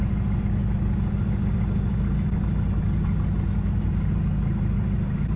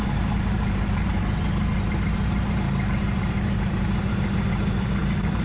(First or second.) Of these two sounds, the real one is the first